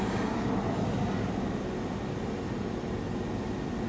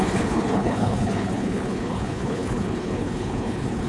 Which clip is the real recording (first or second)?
first